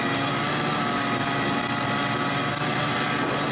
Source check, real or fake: real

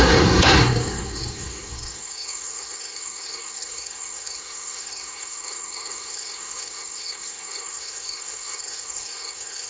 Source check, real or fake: fake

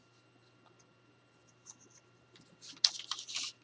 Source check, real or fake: real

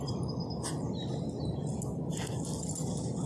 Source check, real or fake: real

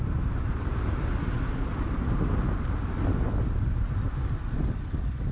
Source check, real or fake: real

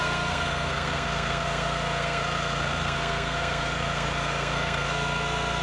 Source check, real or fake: fake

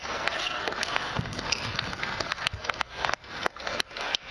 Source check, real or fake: fake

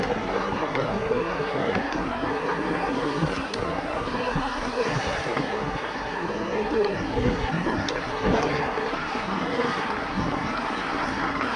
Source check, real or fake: fake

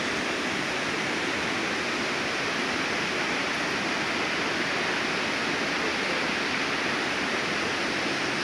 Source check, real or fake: real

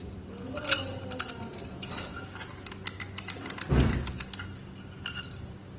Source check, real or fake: real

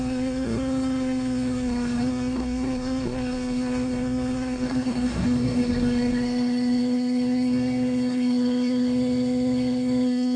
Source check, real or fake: fake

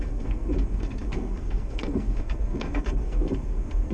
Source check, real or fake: fake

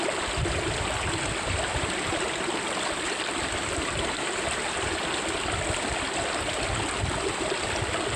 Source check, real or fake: real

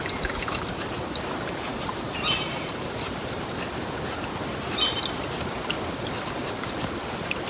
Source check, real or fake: real